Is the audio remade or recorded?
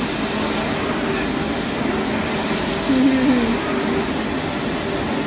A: recorded